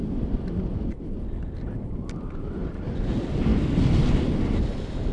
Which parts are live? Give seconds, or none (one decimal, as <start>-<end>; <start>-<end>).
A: 0.0-5.1